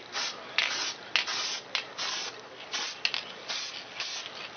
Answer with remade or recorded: recorded